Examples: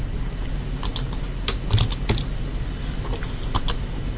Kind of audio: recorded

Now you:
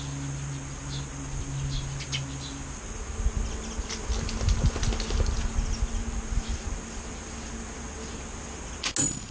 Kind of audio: recorded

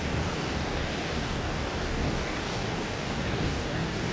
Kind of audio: remade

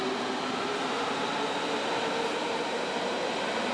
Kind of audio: recorded